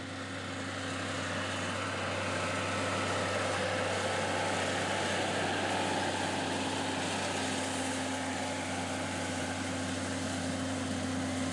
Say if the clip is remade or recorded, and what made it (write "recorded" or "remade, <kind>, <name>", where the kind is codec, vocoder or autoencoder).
recorded